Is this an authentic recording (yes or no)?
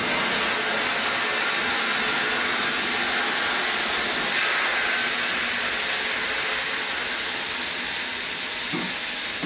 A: yes